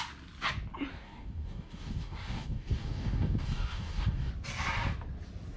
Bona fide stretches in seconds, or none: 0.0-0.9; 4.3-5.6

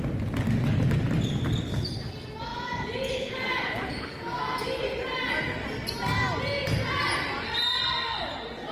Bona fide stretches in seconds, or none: 0.0-2.5; 4.6-8.7

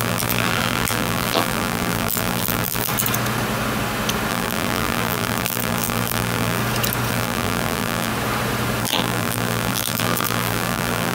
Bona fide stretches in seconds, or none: 2.9-4.3; 6.6-7.1; 8.1-8.8

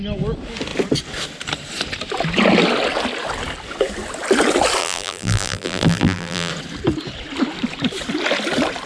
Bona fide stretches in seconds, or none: 0.0-4.8; 6.5-8.9

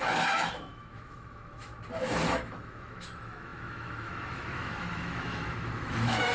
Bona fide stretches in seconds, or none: 1.7-2.3

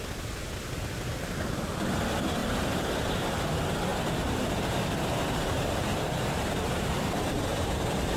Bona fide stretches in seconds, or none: 0.0-1.1; 1.7-2.4; 3.1-3.9

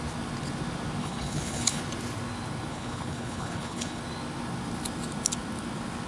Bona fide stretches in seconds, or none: 0.0-1.0; 1.8-2.7; 4.0-6.1

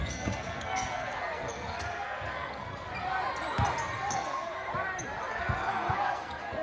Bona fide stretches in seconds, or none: 2.9-4.1; 4.7-5.3